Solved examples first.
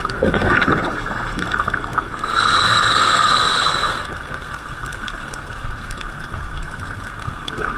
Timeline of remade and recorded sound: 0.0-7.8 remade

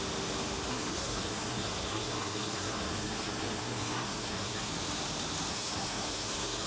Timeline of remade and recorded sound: 0.0-0.7 recorded; 0.7-4.7 remade; 4.7-5.5 recorded; 5.5-6.7 remade

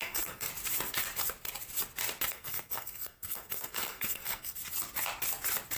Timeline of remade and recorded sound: 0.0-0.5 remade; 0.5-2.3 recorded; 2.3-4.6 remade; 4.6-5.8 recorded

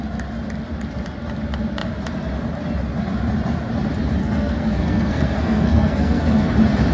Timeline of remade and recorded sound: 0.0-4.2 recorded; 4.2-6.5 remade; 6.5-6.9 recorded